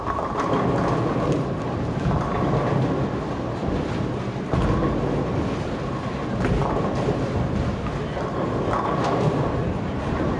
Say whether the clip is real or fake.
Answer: real